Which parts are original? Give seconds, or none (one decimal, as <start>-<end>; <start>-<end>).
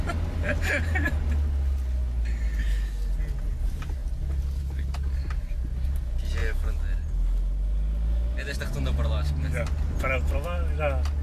0.0-11.2